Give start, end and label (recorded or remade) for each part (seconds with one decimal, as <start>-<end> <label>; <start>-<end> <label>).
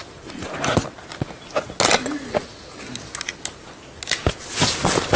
0.0-5.2 recorded